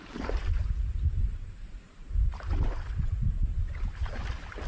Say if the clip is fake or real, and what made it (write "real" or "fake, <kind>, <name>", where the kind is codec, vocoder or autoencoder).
real